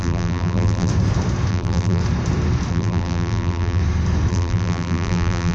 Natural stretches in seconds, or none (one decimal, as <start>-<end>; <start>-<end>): 0.9-1.5; 2.0-2.7; 3.8-4.3